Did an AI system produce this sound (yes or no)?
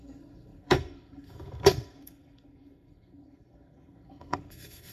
yes